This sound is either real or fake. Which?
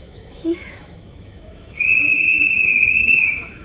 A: fake